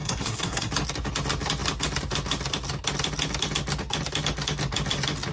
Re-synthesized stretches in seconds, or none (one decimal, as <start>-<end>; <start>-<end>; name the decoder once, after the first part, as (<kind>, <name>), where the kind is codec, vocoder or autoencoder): 0.0-0.7 (codec, SNAC)